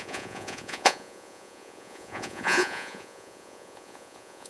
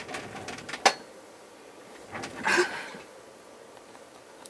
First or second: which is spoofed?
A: first